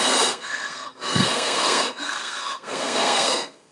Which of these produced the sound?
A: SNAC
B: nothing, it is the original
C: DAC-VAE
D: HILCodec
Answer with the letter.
A